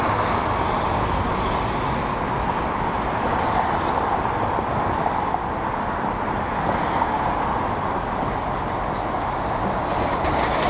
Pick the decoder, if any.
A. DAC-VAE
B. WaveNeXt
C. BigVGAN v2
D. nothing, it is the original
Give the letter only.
D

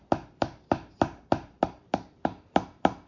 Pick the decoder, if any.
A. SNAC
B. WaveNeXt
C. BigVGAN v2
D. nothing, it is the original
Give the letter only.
C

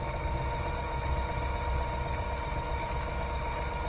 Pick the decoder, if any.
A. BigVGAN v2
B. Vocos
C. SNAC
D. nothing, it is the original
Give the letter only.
D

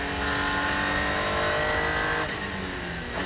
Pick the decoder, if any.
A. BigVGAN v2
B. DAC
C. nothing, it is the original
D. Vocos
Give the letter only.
C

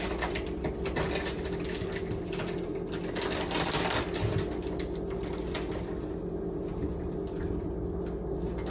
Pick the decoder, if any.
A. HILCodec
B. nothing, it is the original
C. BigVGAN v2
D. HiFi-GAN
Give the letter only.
B